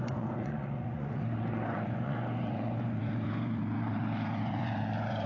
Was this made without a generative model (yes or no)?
no